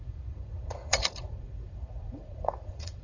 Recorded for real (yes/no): no